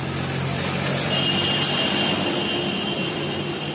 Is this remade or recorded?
recorded